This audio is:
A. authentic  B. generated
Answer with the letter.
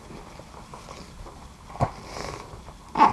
A